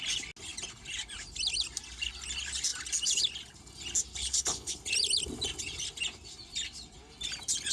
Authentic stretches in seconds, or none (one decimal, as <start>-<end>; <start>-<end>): 0.0-4.2; 4.8-7.7